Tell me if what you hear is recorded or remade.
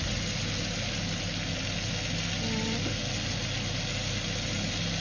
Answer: recorded